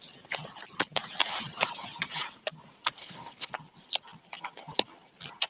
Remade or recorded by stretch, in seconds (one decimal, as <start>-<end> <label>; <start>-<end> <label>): 0.0-3.0 recorded; 3.0-3.5 remade; 3.5-5.5 recorded